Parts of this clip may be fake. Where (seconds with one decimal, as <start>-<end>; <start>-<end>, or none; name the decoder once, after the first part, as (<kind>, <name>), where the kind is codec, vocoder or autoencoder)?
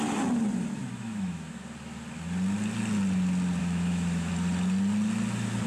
0.8-1.6 (autoencoder, DAC-VAE); 3.6-4.3